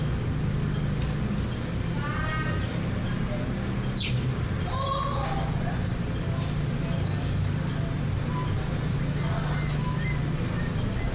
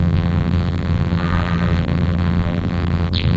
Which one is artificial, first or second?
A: second